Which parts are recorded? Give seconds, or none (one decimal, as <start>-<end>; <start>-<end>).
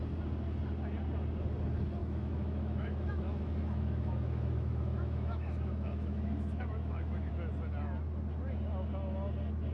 0.0-2.0; 7.3-9.7